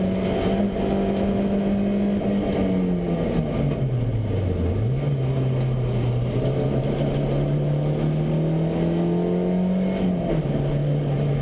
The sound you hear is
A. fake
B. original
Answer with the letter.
B